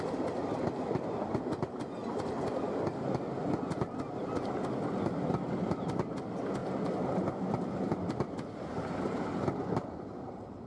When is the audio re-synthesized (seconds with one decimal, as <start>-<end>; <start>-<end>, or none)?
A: none